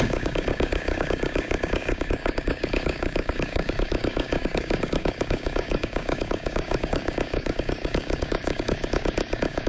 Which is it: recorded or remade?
remade